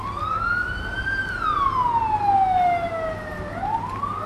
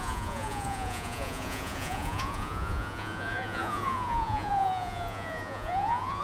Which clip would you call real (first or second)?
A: first